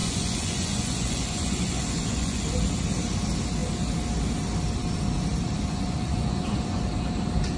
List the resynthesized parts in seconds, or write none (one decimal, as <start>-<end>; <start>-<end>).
0.0-2.4; 5.7-6.8